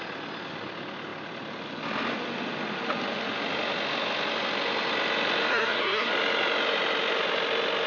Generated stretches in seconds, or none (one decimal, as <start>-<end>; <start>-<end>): 5.5-6.1